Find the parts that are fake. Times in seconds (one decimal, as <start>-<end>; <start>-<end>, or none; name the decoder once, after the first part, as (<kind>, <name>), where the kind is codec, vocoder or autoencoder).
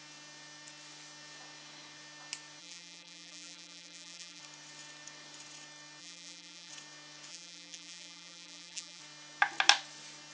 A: 2.6-4.4 (vocoder, BigVGAN v2); 6.0-6.7; 7.3-9.0